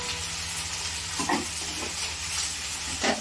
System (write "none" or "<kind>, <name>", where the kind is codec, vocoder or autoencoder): none